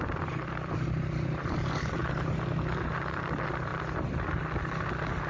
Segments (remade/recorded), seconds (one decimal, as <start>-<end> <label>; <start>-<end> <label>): 0.0-2.0 remade; 2.0-2.8 recorded; 2.8-3.7 remade; 3.7-5.3 recorded

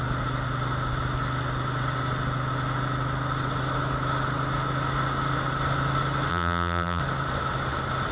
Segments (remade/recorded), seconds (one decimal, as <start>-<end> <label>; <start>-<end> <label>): 0.0-6.3 recorded; 6.3-7.0 remade; 7.0-8.1 recorded

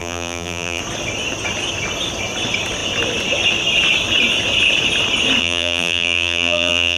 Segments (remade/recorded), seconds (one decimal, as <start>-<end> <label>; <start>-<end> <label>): 0.0-0.8 remade; 0.8-5.4 recorded; 5.4-7.0 remade

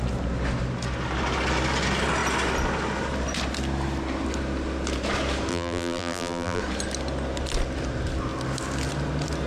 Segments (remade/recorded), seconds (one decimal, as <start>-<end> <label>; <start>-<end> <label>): 0.0-5.5 recorded; 5.5-6.6 remade; 6.6-9.5 recorded

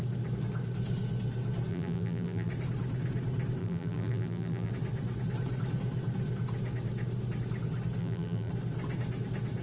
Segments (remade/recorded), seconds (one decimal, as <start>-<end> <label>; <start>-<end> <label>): 0.0-1.7 recorded; 1.7-2.5 remade; 2.5-3.6 recorded; 3.6-4.7 remade; 4.7-8.0 recorded; 8.0-8.5 remade; 8.5-9.6 recorded

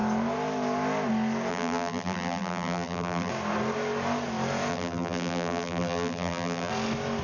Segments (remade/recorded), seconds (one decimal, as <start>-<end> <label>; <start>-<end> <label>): 0.0-1.5 recorded; 1.5-3.3 remade; 3.3-4.7 recorded; 4.7-6.7 remade; 6.7-7.2 recorded

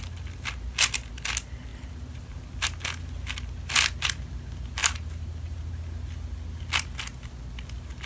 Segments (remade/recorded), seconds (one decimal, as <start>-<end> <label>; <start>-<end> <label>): 0.0-1.7 recorded; 1.7-2.4 remade; 2.4-4.8 recorded; 4.8-5.7 remade; 5.7-8.1 recorded

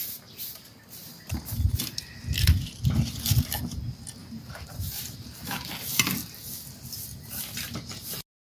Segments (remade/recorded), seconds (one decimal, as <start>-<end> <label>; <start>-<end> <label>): 0.0-4.2 recorded; 4.2-5.7 remade; 5.7-8.5 recorded